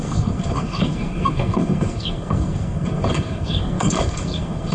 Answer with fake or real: fake